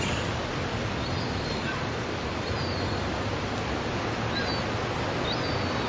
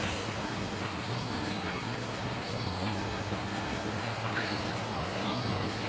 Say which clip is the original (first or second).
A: first